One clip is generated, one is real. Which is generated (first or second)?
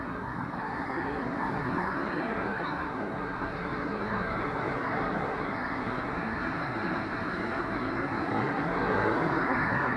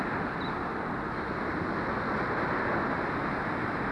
first